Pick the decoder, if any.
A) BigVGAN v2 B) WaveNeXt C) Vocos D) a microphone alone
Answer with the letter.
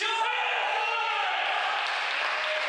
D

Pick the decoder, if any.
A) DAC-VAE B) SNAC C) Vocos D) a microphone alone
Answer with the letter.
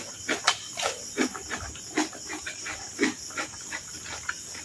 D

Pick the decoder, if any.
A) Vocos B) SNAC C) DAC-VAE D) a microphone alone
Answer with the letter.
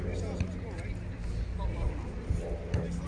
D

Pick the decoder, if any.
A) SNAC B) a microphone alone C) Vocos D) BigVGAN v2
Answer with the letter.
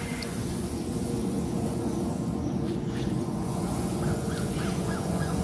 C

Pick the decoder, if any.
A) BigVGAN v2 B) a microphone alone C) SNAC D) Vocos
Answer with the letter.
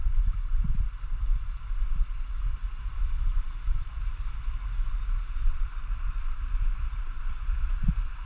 B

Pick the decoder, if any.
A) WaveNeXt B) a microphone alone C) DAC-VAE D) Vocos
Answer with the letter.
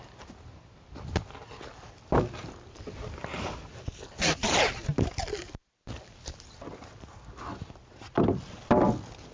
B